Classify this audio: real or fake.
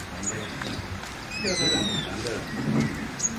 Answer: real